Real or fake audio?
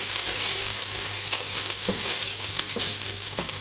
fake